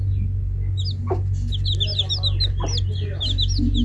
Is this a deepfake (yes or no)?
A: no